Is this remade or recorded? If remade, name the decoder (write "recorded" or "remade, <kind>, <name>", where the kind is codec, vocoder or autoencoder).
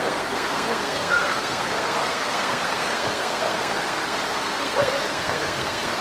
remade, codec, SNAC